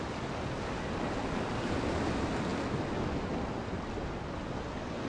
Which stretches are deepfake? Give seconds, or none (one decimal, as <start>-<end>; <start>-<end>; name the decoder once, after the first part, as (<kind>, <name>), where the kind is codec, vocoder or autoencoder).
none